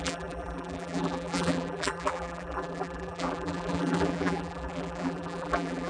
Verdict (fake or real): fake